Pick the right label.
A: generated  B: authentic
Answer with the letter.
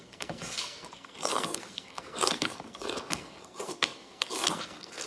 A